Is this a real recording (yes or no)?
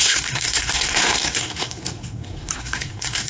no